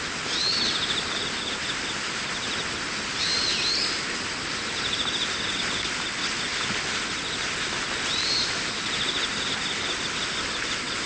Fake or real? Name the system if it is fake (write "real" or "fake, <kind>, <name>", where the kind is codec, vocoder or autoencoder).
real